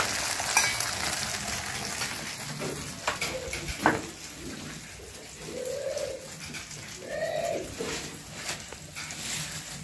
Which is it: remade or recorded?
recorded